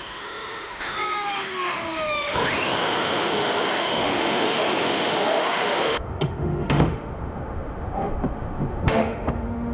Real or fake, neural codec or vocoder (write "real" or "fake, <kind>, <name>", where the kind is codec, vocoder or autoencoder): fake, autoencoder, DAC-VAE